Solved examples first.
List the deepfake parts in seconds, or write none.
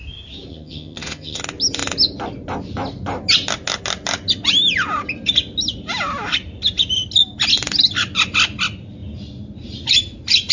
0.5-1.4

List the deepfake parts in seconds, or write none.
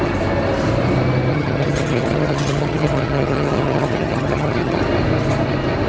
1.3-4.8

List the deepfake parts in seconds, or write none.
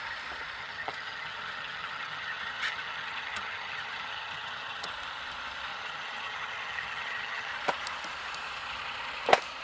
0.6-4.9; 5.7-7.5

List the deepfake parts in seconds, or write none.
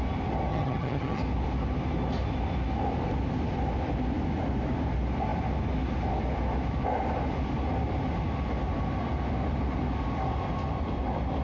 0.5-1.2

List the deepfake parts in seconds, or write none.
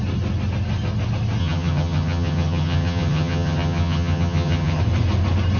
1.4-4.8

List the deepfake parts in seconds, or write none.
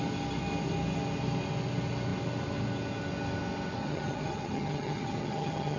3.8-5.8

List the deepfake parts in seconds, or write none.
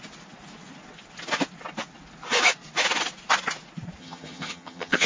4.0-5.1